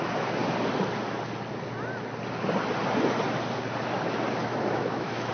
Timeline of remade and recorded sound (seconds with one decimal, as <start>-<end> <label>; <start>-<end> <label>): 0.0-4.4 recorded; 4.4-5.3 remade